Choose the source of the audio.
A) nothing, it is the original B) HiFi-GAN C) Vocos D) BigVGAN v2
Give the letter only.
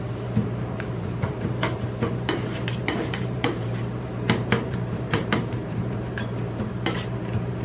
D